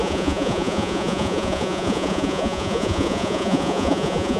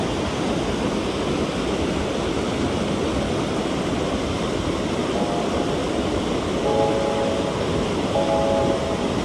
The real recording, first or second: second